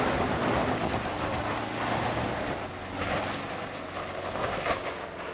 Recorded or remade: recorded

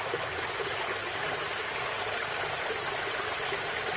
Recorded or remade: recorded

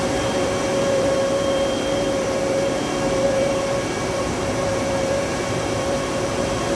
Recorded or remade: remade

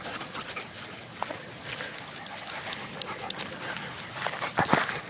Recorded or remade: recorded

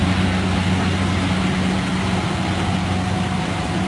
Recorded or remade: recorded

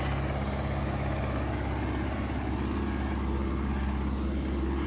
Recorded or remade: recorded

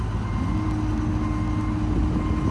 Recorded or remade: recorded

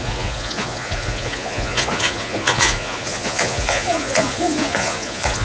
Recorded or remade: remade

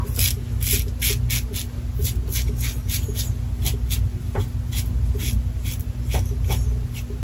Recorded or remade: recorded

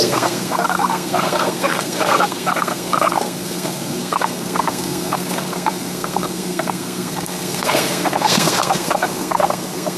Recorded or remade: remade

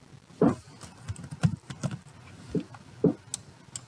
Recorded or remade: recorded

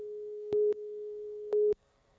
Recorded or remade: remade